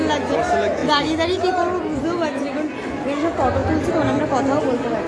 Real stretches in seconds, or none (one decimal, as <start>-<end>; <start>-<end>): 0.0-0.8; 2.0-3.6; 4.6-5.1